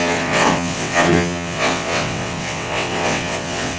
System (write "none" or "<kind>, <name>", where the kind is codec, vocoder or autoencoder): vocoder, WaveNeXt